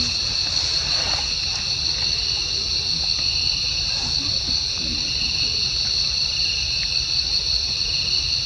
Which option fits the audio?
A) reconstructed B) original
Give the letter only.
B